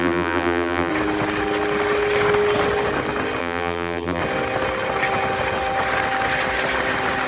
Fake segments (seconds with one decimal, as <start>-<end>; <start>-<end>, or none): 0.0-0.9; 3.4-4.2